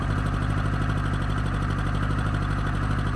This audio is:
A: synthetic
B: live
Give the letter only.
B